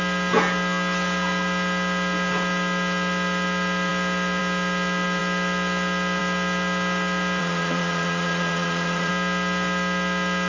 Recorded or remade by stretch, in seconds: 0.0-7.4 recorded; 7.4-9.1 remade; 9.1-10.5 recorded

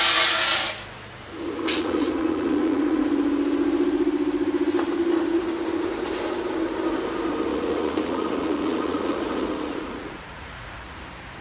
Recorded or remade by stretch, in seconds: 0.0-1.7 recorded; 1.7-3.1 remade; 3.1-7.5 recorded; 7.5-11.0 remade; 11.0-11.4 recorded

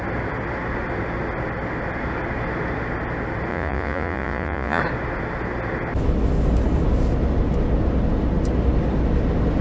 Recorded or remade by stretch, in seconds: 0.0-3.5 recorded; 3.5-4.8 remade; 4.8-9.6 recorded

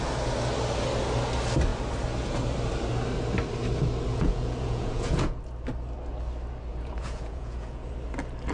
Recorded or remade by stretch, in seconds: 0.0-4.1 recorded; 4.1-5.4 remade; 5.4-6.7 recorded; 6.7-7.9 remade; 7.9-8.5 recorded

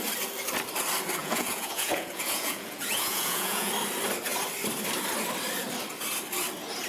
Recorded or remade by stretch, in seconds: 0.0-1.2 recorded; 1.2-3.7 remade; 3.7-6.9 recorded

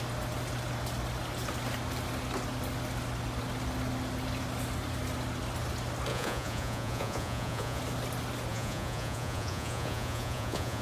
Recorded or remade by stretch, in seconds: 0.0-6.1 recorded; 6.1-7.8 remade; 7.8-8.5 recorded; 8.5-10.8 remade